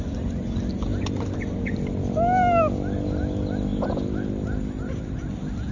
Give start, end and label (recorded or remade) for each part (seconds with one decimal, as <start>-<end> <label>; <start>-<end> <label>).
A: 0.0-5.7 recorded